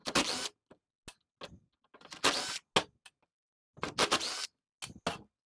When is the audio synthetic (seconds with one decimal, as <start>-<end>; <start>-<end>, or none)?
none